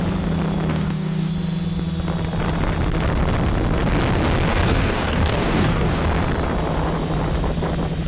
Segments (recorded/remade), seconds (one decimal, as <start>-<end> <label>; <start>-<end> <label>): 0.0-0.7 recorded; 0.7-1.3 remade; 1.3-4.5 recorded; 4.5-6.0 remade; 6.0-8.1 recorded